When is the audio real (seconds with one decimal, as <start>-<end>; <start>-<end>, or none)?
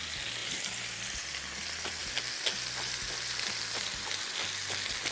0.0-0.4; 1.3-5.1